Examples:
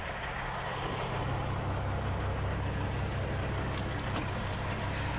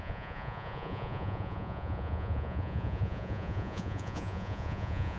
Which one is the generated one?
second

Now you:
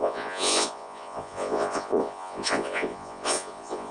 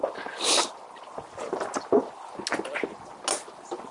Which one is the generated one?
first